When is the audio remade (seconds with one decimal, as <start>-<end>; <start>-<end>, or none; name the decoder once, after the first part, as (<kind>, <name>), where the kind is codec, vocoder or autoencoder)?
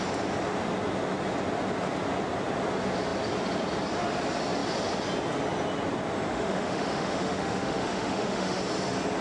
6.3-8.6 (autoencoder, DAC-VAE)